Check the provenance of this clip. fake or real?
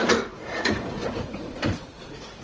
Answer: fake